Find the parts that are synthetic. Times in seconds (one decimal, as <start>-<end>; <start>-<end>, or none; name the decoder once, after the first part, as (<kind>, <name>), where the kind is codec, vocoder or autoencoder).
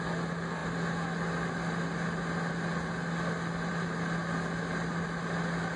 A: none